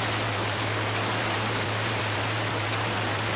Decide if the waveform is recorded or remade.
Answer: remade